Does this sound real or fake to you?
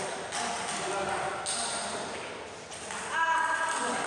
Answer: real